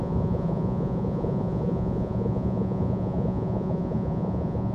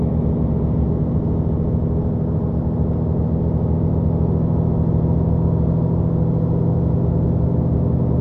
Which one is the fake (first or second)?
first